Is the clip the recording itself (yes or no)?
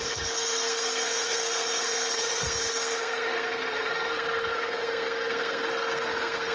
no